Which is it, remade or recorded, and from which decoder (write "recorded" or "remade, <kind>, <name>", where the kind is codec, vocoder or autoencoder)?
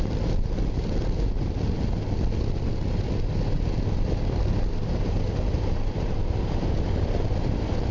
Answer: recorded